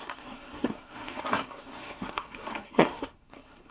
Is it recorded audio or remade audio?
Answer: remade